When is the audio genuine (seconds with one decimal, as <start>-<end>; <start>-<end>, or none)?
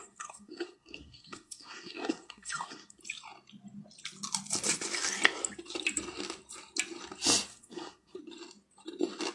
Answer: 3.0-7.5; 8.2-9.3